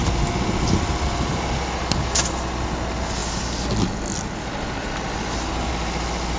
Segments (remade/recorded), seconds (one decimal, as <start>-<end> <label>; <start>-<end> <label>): 0.0-6.4 recorded